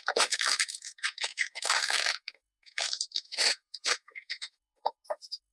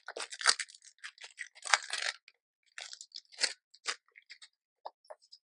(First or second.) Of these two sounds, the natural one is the second